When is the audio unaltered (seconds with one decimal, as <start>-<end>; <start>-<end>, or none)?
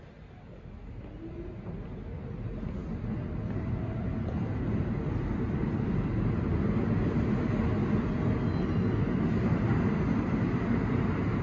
0.0-11.4